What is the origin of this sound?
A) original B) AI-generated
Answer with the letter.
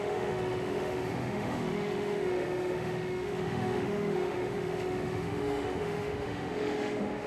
B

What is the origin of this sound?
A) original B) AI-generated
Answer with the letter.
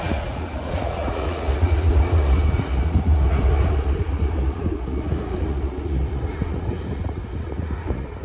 B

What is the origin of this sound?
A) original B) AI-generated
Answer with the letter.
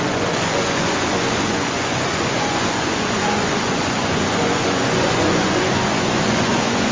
B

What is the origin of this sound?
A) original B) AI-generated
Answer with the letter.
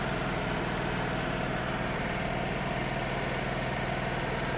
A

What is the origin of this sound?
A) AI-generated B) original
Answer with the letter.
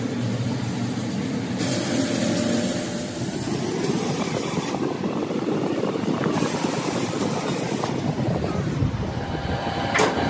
A